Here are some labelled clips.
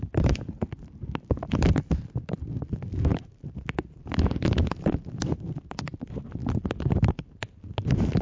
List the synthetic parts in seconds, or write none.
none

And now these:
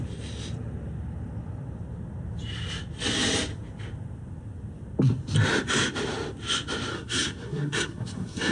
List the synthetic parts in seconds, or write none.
6.9-8.5

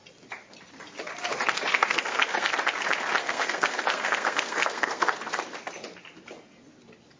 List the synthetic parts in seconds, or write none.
1.7-2.5; 3.2-5.1

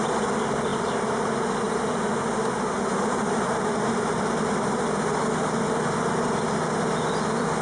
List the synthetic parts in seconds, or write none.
none

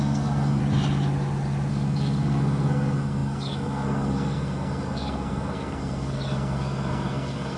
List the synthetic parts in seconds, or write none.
0.0-0.6; 1.7-7.6

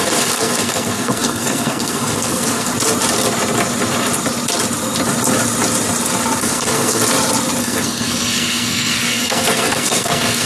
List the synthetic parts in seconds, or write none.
0.0-2.7; 6.4-7.0; 7.6-10.5

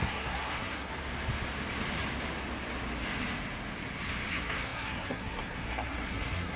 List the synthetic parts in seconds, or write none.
0.0-0.9; 4.3-6.6